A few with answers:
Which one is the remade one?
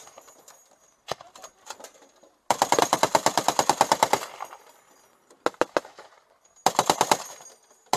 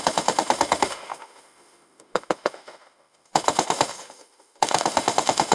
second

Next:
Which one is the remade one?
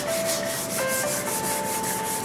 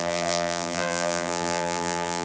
second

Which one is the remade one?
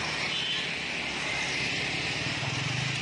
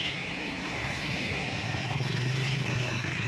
second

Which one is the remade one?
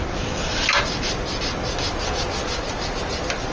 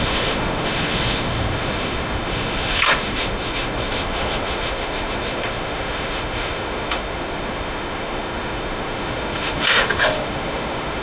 second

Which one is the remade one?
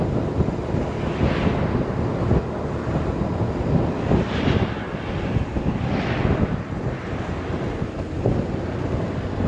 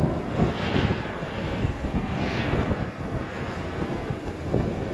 second